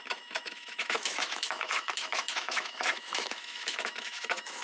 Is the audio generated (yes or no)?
yes